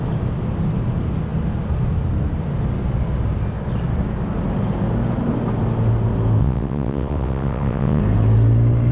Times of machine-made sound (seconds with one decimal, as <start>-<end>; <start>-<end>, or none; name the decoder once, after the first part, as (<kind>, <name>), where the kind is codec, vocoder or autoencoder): 6.4-8.0 (vocoder, WaveNeXt)